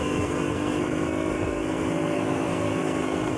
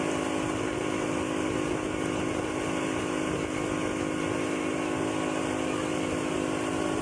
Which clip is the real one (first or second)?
second